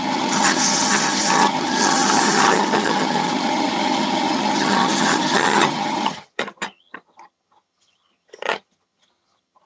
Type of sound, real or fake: fake